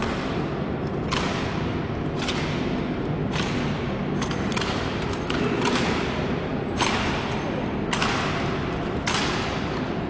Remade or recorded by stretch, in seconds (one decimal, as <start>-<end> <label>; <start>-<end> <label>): 0.0-10.1 recorded